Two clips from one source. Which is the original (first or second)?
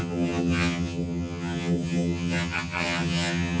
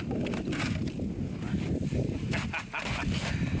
second